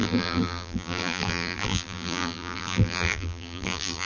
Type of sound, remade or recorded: remade